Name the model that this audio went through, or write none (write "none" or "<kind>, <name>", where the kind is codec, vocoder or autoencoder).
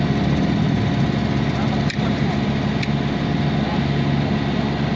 none